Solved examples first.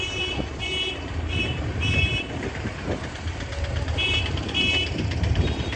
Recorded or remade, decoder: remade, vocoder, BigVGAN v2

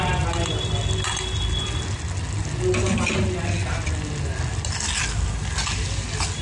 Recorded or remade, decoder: recorded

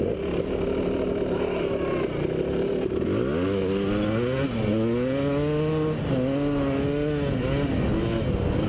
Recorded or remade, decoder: recorded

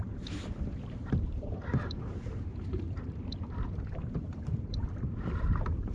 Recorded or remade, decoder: remade, vocoder, BigVGAN v2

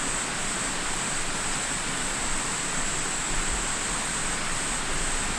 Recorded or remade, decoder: recorded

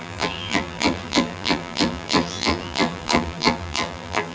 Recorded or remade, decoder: remade, vocoder, BigVGAN v2